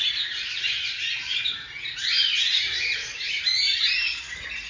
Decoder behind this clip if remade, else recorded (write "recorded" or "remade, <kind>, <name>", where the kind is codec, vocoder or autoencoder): remade, vocoder, BigVGAN v2